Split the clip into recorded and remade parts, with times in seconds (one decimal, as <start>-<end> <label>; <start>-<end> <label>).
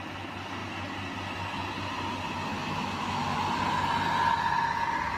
0.0-2.5 recorded; 2.5-3.4 remade; 3.4-5.2 recorded